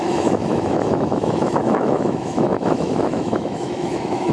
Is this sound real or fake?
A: fake